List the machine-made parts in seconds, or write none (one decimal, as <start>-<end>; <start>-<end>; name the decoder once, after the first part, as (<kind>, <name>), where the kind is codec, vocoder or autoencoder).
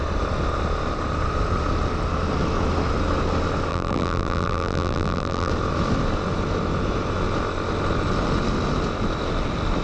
3.7-5.5 (vocoder, BigVGAN v2)